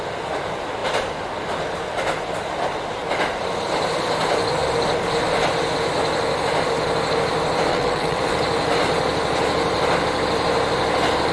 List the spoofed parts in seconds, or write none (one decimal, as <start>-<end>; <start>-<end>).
7.7-8.2